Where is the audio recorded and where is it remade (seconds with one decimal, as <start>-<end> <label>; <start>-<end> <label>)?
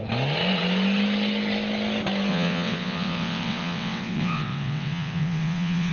0.0-2.3 recorded; 2.3-5.9 remade